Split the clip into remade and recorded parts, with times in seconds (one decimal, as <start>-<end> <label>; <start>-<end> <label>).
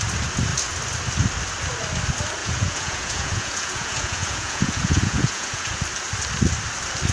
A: 0.0-2.4 recorded; 2.4-5.8 remade; 5.8-7.1 recorded